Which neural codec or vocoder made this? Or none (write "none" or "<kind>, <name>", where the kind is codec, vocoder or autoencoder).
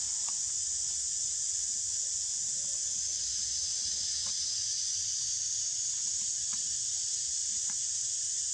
vocoder, Vocos